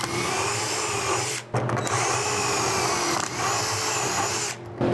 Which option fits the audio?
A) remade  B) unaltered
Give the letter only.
B